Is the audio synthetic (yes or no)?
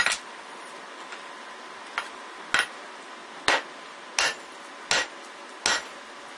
no